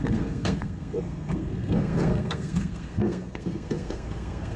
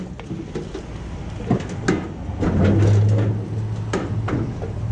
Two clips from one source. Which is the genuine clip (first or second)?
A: second